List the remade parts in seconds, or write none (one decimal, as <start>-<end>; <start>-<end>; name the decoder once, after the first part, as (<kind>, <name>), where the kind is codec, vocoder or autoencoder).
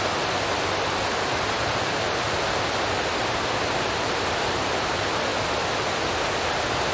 3.2-4.8 (vocoder, BigVGAN v2)